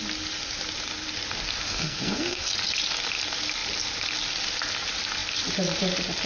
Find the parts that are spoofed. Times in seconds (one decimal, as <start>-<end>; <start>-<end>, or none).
1.7-2.5